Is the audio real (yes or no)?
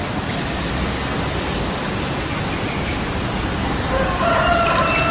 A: yes